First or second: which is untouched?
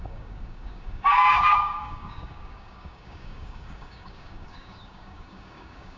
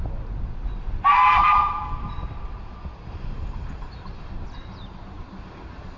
second